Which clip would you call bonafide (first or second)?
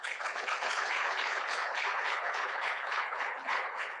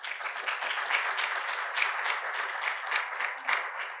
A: second